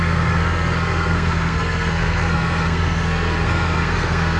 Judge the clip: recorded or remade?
remade